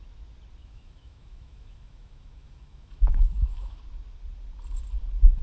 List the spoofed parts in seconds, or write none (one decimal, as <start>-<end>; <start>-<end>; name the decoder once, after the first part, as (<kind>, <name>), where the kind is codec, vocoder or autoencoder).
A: 0.6-3.8 (autoencoder, DAC-VAE)